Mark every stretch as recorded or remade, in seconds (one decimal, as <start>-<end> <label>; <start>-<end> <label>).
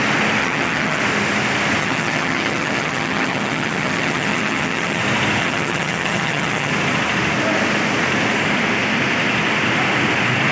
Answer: 0.0-0.4 recorded; 0.4-1.0 remade; 1.0-1.8 recorded; 1.8-5.0 remade; 5.0-5.4 recorded; 5.4-6.7 remade; 6.7-10.5 recorded